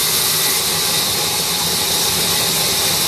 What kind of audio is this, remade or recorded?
recorded